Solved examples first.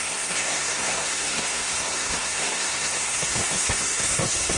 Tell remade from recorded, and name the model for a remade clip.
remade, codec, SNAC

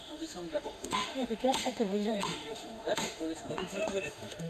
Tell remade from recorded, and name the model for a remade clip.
remade, autoencoder, DAC-VAE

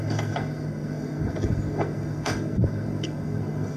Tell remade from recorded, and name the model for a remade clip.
remade, codec, SNAC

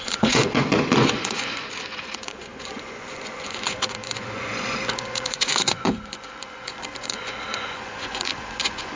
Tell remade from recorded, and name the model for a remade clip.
remade, vocoder, Vocos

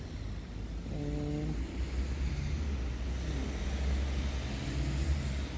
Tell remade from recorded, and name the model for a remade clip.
recorded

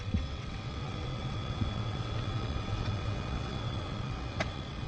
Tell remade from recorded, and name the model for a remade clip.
remade, vocoder, WaveNeXt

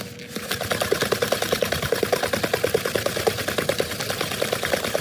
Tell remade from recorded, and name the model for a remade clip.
recorded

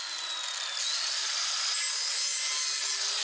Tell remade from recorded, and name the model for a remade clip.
recorded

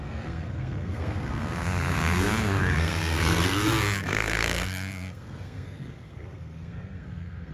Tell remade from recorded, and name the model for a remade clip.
remade, codec, SNAC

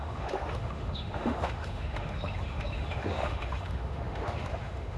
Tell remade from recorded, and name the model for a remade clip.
remade, autoencoder, DAC-VAE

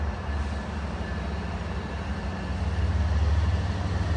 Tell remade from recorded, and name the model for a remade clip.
recorded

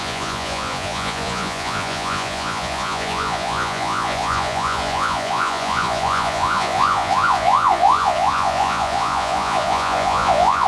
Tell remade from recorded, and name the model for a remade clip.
remade, vocoder, Vocos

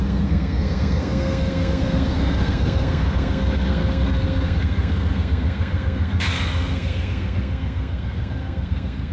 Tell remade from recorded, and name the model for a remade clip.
remade, codec, SNAC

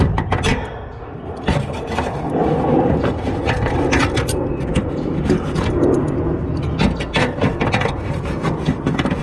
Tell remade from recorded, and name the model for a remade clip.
recorded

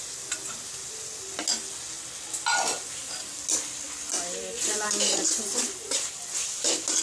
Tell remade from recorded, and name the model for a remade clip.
recorded